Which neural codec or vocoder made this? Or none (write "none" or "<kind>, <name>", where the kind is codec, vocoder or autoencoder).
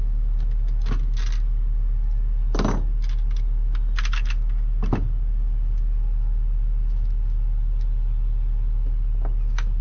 none